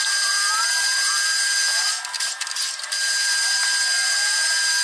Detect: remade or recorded recorded